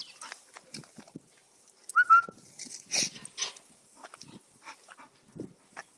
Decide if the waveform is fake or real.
real